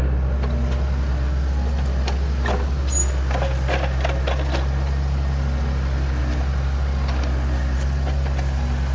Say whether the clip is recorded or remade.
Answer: recorded